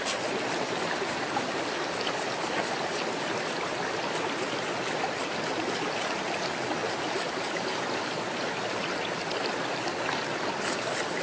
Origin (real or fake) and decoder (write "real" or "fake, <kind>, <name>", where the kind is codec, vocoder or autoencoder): real